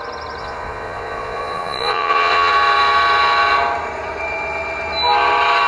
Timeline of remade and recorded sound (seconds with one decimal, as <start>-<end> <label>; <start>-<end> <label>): 0.0-0.4 recorded; 0.4-2.5 remade; 2.5-5.7 recorded